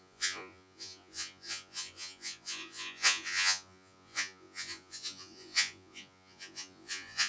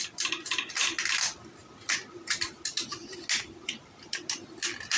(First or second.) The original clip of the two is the second